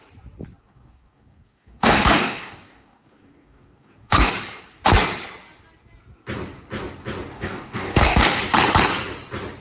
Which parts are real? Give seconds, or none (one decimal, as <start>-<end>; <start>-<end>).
0.0-0.6; 4.3-7.3; 8.4-9.6